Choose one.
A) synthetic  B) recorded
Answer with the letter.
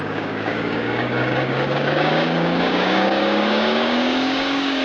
A